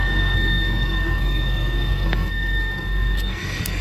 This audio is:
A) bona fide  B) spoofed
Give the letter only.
B